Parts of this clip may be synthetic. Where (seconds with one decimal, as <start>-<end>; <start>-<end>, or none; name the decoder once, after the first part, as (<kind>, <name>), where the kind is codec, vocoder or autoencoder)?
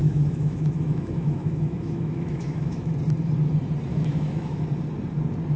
0.0-2.9 (autoencoder, DAC-VAE); 3.9-4.6